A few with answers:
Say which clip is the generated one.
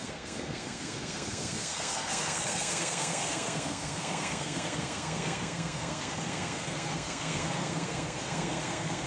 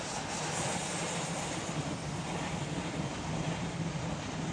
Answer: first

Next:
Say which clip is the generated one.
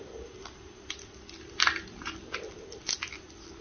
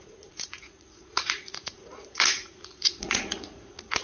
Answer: second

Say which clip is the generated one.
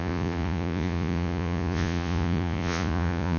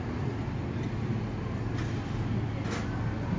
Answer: first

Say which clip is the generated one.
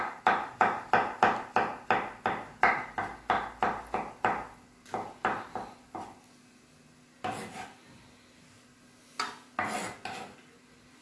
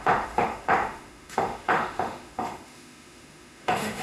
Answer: second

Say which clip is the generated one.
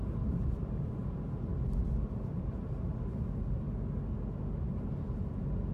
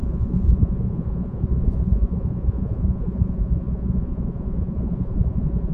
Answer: second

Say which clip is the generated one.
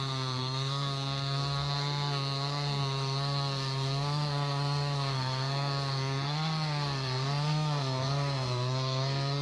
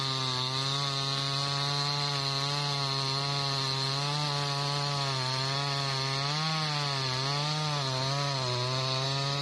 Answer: first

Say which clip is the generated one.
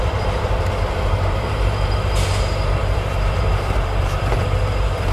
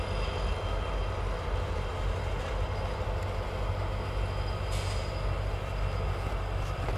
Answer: first